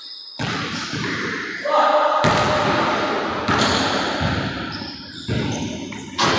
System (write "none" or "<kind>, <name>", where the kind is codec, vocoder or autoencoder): none